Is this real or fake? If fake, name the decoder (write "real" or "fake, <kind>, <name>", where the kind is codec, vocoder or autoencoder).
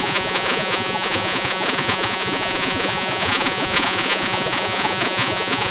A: fake, vocoder, Vocos